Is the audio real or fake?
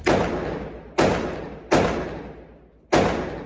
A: real